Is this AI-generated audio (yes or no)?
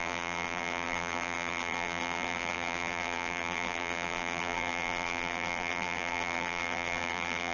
yes